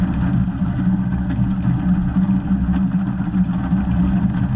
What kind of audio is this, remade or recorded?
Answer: recorded